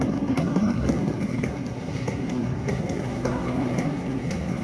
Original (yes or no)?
no